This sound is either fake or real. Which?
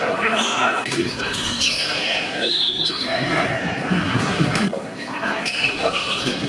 fake